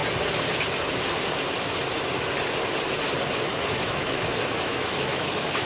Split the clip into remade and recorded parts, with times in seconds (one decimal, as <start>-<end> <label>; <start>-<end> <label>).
0.0-3.4 recorded; 3.4-5.7 remade